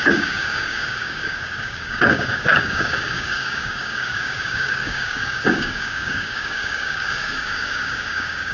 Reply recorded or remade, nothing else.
remade